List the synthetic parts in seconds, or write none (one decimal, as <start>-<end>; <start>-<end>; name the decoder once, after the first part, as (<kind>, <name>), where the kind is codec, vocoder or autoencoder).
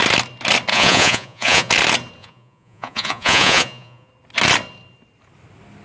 0.7-1.7 (vocoder, Vocos); 2.2-4.1